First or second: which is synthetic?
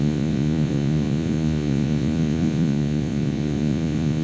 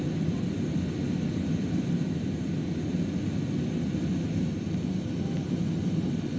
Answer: first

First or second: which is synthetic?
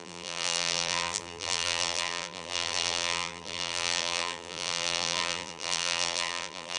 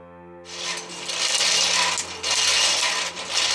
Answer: first